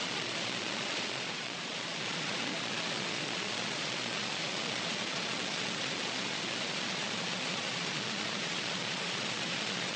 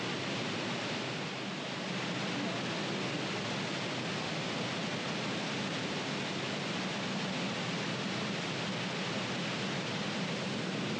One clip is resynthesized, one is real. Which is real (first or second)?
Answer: second